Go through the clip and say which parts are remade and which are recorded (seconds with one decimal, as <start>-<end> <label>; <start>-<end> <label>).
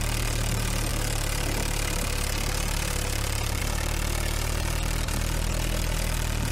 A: 0.0-6.5 recorded